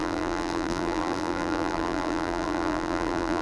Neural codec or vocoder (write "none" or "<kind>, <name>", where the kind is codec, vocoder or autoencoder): vocoder, BigVGAN v2